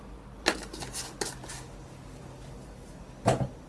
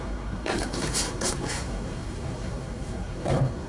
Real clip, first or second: first